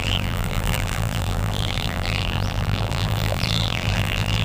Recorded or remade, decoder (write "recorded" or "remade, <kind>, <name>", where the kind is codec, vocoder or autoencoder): remade, vocoder, BigVGAN v2